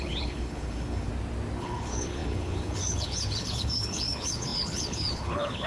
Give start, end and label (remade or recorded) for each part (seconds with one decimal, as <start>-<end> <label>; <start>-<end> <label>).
0.0-1.1 remade; 1.1-1.6 recorded; 1.6-5.7 remade